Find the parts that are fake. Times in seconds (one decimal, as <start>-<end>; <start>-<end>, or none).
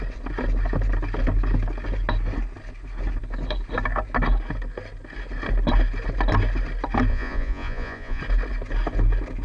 7.1-8.2